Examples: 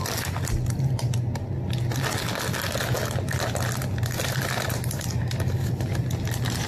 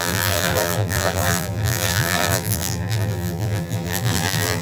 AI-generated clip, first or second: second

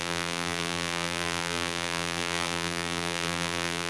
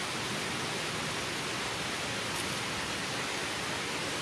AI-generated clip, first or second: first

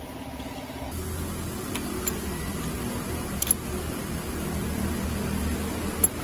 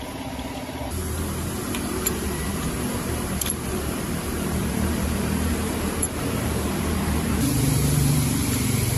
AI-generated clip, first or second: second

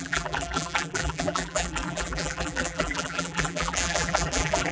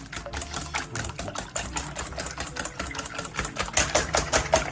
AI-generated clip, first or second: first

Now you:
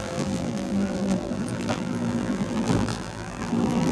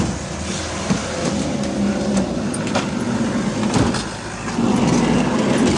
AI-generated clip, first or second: first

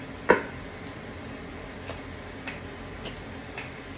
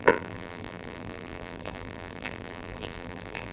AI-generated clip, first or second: second